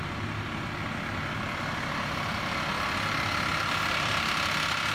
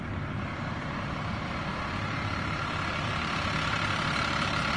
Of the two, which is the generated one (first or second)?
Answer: second